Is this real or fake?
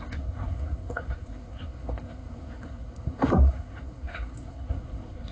fake